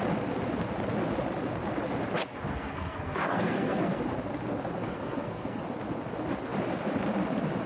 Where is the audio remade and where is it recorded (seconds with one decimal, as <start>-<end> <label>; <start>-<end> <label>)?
0.0-2.5 recorded; 2.5-4.0 remade; 4.0-4.8 recorded; 4.8-5.6 remade; 5.6-7.7 recorded